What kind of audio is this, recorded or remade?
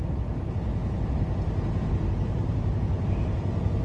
recorded